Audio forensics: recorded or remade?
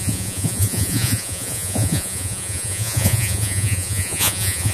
remade